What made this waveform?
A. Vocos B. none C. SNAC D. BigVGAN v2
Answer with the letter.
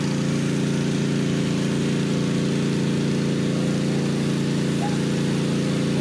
B